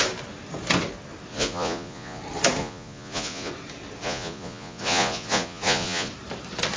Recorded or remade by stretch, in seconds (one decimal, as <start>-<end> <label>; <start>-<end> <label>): 0.0-1.3 recorded; 1.3-2.2 remade; 2.2-2.6 recorded; 2.6-3.5 remade; 3.5-4.0 recorded; 4.0-6.1 remade; 6.1-6.8 recorded